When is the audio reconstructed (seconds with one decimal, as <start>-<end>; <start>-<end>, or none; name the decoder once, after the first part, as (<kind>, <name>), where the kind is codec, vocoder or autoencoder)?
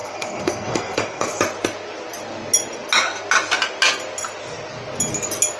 0.0-1.4 (codec, SNAC)